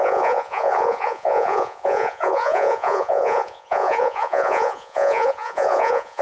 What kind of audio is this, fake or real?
fake